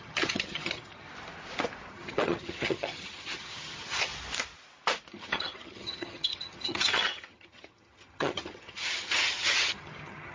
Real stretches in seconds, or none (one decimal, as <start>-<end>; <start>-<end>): 1.1-1.9; 4.1-5.1

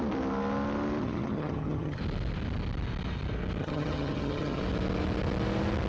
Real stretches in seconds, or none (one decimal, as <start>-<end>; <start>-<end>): 0.0-1.0; 2.0-3.6; 4.6-5.9

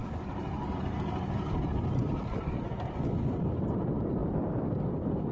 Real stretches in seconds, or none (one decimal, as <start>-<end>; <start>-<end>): 0.0-5.3

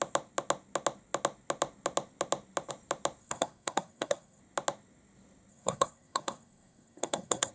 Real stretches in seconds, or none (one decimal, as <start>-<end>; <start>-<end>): 0.0-3.2; 4.4-5.5

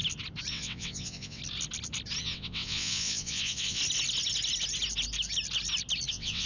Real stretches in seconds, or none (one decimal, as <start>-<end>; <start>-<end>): 0.0-0.5; 1.4-2.2; 3.8-6.1